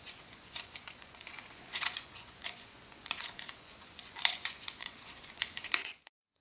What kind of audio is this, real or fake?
fake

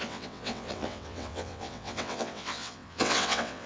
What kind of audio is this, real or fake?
fake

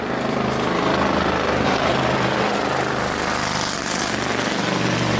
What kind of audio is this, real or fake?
fake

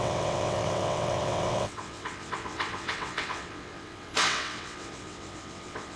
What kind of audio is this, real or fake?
fake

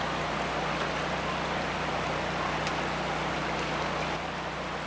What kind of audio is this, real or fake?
real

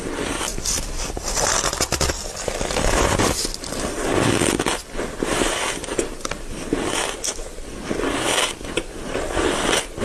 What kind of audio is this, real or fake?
fake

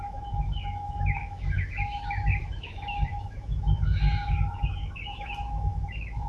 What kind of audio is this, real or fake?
fake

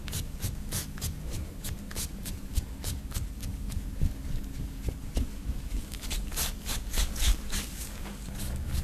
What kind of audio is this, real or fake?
fake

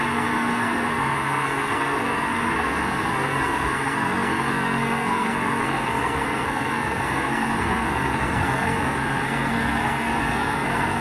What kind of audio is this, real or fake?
fake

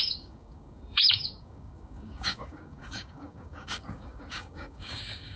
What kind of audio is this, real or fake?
fake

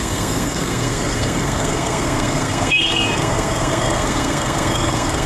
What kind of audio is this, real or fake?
fake